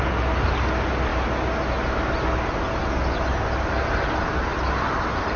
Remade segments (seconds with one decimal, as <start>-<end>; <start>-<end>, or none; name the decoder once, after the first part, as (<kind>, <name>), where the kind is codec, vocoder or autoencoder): none